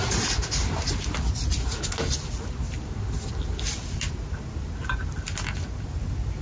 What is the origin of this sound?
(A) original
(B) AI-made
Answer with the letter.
A